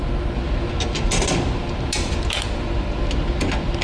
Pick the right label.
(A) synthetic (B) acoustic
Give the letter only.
B